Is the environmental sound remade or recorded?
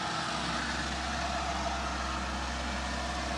recorded